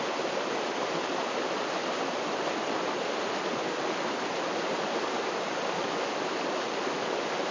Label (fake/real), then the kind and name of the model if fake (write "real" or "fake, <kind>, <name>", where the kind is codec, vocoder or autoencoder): real